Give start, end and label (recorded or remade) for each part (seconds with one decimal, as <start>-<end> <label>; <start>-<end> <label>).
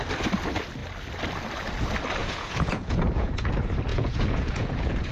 0.0-2.2 recorded; 2.2-3.5 remade; 3.5-3.9 recorded; 3.9-5.1 remade